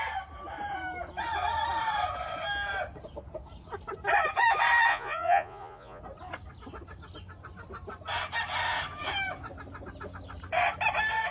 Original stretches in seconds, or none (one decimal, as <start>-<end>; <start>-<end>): 0.0-4.9; 6.0-11.3